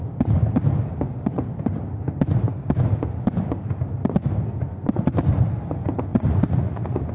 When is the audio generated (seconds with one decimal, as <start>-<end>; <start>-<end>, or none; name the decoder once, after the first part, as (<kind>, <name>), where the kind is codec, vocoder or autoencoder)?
6.1-7.1 (vocoder, Vocos)